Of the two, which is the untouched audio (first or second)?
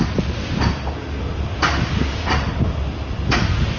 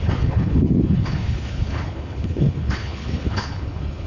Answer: first